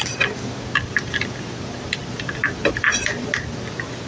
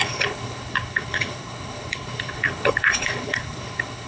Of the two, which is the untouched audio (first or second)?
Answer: first